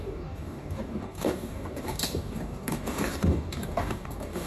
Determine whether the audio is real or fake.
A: fake